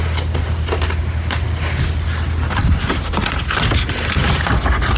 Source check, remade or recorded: recorded